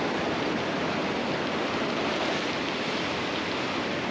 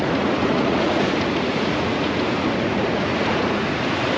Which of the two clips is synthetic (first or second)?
second